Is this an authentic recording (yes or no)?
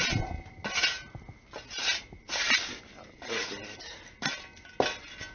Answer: yes